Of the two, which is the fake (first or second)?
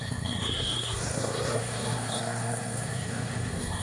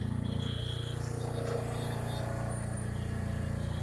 first